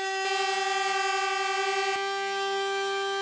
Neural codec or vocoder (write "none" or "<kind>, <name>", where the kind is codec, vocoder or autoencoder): none